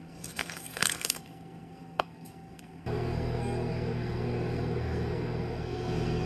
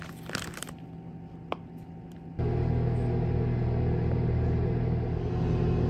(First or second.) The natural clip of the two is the second